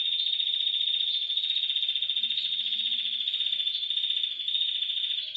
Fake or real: real